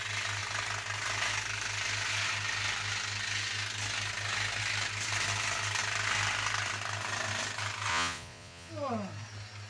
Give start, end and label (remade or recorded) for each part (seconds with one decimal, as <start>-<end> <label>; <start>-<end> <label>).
0.0-7.9 recorded; 7.9-8.7 remade; 8.7-9.7 recorded